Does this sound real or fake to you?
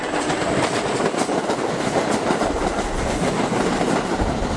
fake